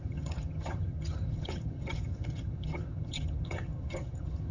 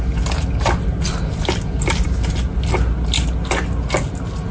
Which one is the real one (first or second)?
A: second